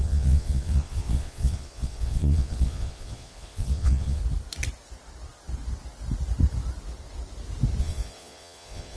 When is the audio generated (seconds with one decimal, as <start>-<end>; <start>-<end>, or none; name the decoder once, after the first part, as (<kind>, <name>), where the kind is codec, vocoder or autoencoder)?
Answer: 0.0-4.2 (vocoder, Vocos); 7.8-9.0